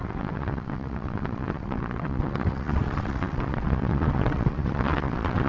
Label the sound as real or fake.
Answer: fake